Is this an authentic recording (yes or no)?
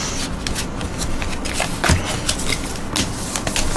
yes